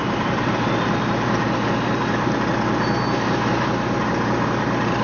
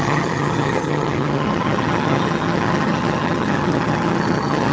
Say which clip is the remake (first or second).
second